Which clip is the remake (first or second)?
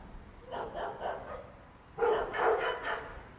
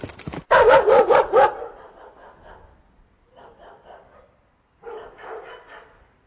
second